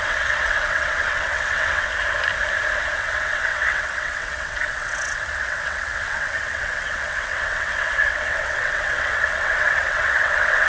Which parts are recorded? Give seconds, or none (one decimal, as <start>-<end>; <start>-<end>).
1.9-3.0